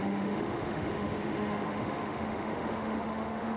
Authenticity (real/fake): fake